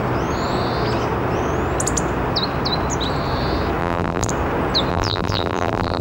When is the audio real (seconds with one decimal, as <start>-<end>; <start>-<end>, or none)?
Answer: 0.0-3.8; 4.3-4.9